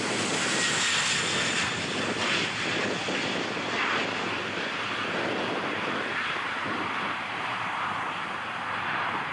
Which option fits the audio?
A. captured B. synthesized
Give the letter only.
A